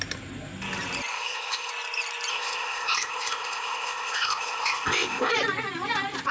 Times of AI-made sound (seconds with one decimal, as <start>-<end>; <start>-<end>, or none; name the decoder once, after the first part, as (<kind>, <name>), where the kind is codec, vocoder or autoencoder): 1.1-1.7 (codec, ZipCodec); 2.3-5.3